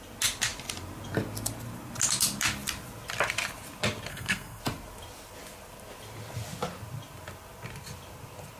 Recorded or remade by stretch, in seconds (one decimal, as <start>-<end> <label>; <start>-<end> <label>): 0.0-4.1 recorded; 4.1-4.6 remade; 4.6-8.6 recorded

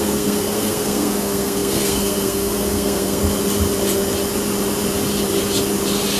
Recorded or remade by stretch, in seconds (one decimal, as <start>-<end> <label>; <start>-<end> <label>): 0.0-3.2 remade; 3.2-6.2 recorded

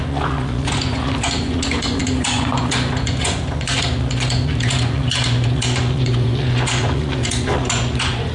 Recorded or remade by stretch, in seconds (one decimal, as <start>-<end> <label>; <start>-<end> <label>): 0.0-8.3 remade

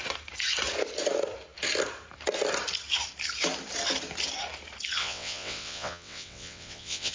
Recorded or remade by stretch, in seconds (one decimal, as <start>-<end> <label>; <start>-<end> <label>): 0.0-5.0 recorded; 5.0-7.1 remade